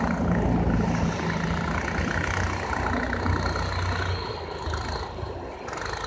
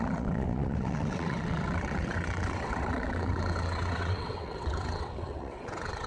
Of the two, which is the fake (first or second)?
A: second